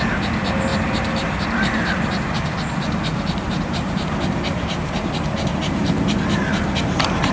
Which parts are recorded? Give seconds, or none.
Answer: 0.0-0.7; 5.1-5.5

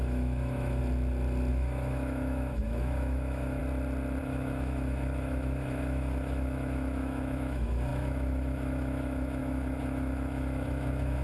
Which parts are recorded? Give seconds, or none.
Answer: 0.8-1.5; 3.6-4.2

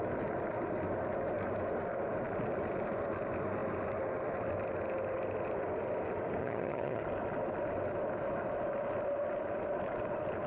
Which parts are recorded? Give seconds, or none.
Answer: 0.0-6.4; 7.0-10.5

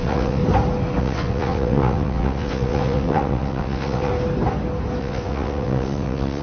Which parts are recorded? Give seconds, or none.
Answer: 0.4-1.0; 4.1-5.0

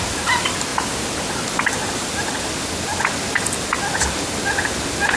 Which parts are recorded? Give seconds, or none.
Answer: 0.0-5.2